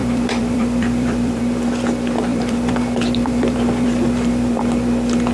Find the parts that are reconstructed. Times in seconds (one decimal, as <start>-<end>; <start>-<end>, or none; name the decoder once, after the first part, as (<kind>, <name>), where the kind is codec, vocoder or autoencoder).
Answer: 0.0-1.4 (vocoder, BigVGAN v2); 2.3-4.6